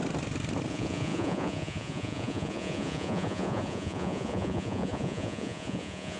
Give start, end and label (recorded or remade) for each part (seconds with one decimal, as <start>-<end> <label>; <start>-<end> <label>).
0.0-0.7 recorded; 0.7-6.2 remade